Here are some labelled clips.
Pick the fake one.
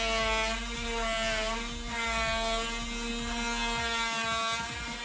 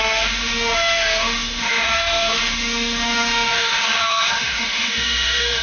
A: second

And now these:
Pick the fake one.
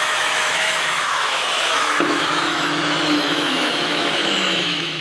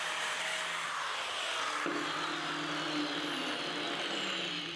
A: first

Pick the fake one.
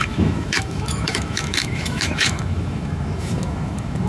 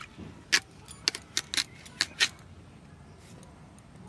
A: first